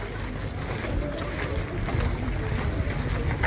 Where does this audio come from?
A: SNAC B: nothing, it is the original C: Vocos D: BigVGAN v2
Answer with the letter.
B